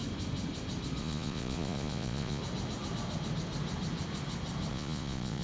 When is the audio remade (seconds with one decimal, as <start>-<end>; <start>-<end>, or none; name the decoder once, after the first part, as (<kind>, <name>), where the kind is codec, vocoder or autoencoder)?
1.0-2.4 (vocoder, Vocos); 4.7-5.4